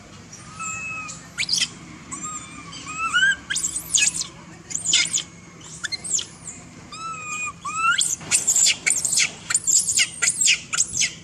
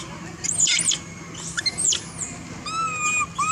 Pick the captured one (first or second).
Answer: second